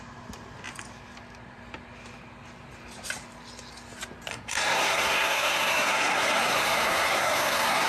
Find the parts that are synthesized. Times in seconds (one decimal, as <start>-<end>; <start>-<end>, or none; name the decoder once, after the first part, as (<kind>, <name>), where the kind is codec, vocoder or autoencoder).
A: 4.3-7.9 (codec, SNAC)